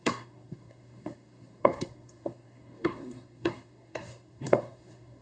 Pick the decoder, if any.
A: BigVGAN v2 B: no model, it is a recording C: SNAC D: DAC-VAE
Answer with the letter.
C